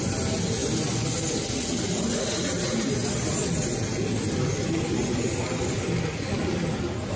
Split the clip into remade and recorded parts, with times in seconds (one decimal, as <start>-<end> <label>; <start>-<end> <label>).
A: 0.0-7.2 recorded